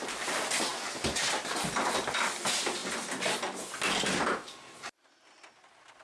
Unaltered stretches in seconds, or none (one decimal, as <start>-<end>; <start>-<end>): 0.0-6.0